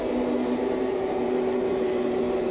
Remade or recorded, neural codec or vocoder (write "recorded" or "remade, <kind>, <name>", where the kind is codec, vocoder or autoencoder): remade, vocoder, BigVGAN v2